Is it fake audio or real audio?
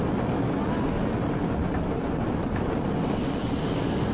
real